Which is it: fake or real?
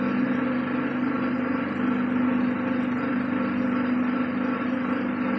real